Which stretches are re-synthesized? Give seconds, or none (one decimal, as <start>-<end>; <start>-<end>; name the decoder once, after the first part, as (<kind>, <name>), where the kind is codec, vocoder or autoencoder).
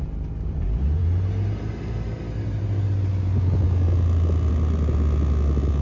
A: none